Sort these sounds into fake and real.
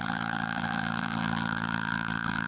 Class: fake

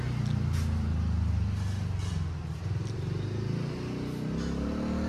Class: real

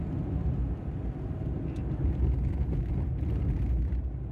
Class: real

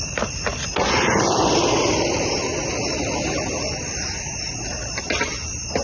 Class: real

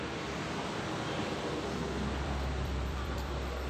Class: fake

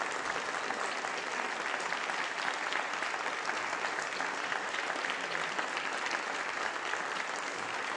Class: real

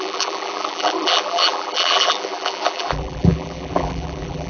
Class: fake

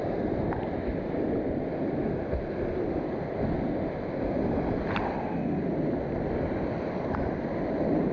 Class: real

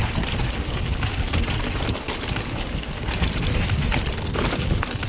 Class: fake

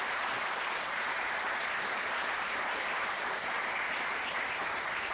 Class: fake